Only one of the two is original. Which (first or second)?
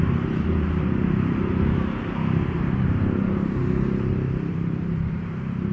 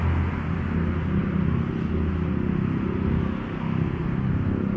second